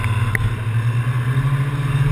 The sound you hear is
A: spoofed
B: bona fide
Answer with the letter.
B